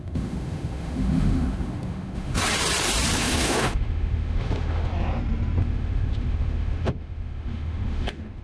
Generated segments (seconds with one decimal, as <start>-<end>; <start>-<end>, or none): 0.0-2.4; 3.2-4.9; 5.6-8.4